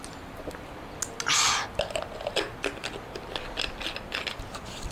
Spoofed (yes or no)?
no